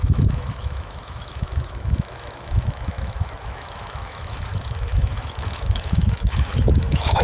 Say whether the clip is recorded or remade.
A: remade